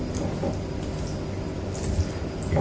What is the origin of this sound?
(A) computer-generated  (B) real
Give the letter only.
B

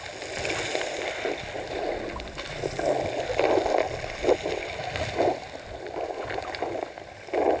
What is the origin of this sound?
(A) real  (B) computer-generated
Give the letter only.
A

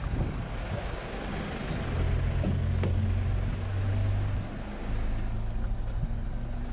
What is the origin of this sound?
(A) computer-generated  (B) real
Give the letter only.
B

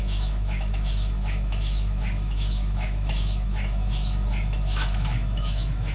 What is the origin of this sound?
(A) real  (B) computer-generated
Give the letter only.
B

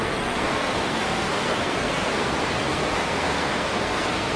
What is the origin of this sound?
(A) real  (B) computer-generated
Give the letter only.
B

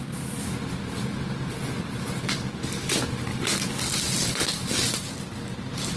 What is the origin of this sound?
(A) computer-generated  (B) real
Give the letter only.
B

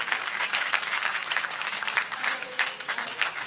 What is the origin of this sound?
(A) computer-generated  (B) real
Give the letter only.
A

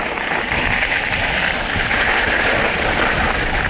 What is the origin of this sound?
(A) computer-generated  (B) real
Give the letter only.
A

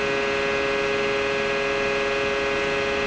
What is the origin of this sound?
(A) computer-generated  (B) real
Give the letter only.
B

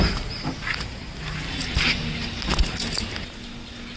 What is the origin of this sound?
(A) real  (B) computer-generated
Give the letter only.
A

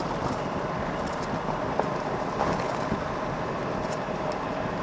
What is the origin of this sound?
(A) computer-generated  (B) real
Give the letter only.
B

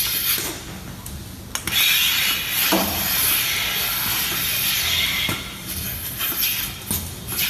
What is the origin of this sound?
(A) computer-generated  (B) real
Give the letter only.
B